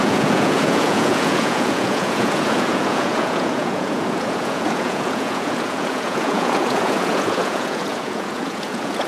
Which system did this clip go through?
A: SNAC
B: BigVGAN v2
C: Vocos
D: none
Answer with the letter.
C